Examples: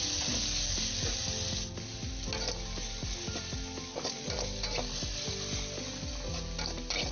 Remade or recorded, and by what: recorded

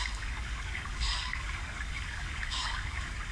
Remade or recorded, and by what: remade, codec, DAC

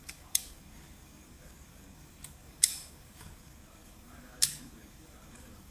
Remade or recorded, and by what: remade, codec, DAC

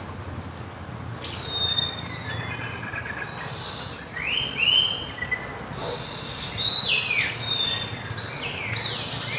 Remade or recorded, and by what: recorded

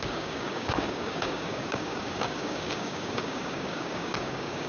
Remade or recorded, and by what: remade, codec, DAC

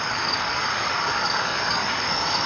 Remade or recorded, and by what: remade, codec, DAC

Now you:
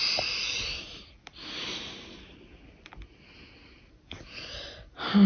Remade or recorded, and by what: recorded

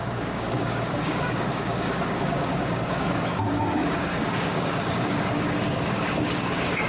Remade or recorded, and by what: remade, codec, DAC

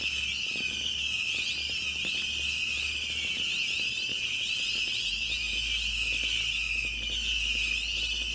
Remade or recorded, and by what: recorded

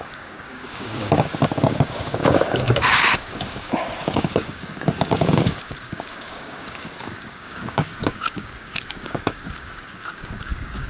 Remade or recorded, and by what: remade, codec, DAC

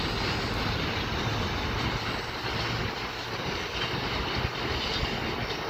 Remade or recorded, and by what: recorded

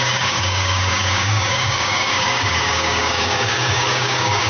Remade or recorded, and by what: remade, codec, DAC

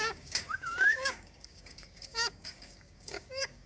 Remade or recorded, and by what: remade, codec, DAC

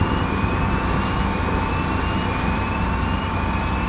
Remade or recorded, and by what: recorded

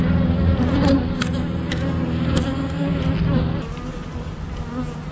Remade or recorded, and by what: recorded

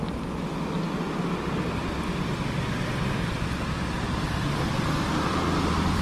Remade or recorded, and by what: recorded